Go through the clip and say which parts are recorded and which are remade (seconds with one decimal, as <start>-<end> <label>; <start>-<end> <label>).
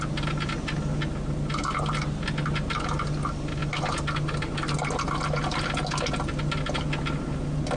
0.0-7.8 recorded